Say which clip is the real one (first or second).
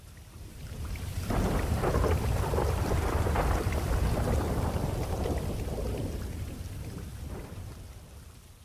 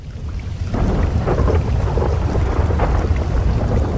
second